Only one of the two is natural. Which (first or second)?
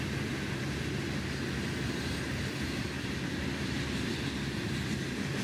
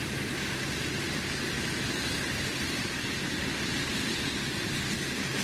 first